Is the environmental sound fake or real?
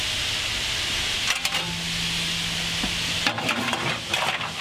real